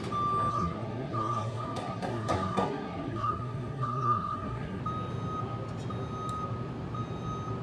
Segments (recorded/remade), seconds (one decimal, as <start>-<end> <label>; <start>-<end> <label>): 0.0-0.5 recorded; 0.5-4.8 remade; 4.8-7.6 recorded